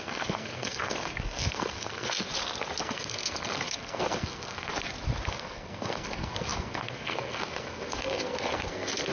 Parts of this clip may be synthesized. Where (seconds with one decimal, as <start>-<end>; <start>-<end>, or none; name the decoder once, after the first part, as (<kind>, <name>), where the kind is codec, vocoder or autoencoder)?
0.0-2.3 (codec, SNAC); 2.8-4.7; 5.3-9.1